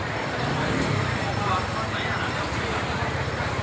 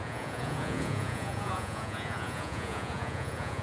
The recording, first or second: first